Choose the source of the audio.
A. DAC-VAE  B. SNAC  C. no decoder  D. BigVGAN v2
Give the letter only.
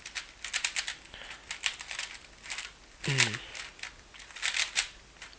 C